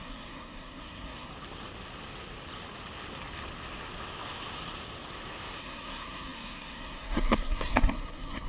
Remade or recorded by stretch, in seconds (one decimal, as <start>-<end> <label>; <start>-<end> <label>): 0.0-1.3 remade; 1.3-5.6 recorded; 5.6-8.5 remade

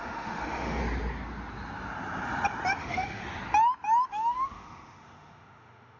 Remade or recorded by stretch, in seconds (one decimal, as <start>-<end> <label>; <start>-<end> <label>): 0.0-0.8 remade; 0.8-2.8 recorded; 2.8-3.2 remade; 3.2-4.1 recorded; 4.1-6.0 remade